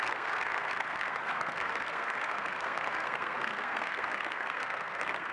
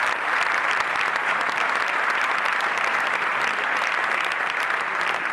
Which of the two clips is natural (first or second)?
second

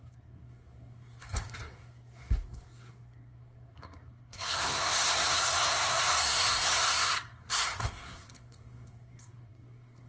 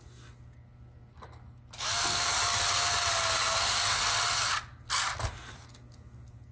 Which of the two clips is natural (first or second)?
second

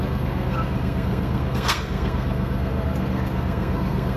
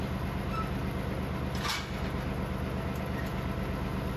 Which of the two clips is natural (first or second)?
second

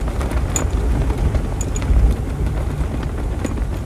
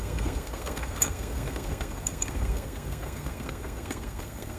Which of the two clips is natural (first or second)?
first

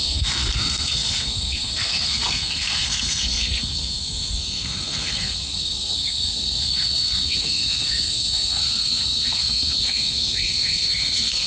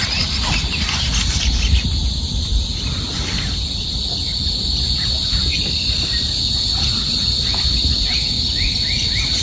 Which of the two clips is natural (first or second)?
second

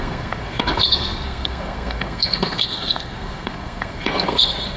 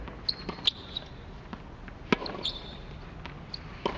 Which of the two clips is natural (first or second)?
second